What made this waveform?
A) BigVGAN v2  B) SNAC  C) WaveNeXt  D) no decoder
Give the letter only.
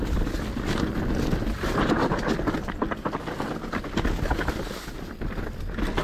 D